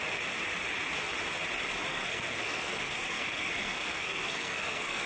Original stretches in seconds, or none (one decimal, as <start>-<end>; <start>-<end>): 0.0-1.9